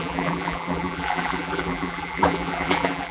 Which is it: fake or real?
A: fake